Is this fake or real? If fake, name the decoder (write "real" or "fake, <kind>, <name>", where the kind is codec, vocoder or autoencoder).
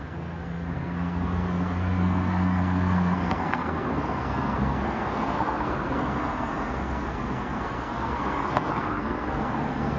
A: fake, codec, SNAC